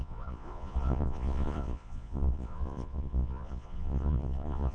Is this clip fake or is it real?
fake